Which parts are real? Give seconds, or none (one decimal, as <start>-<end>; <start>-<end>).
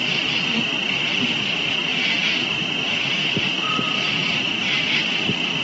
0.0-5.6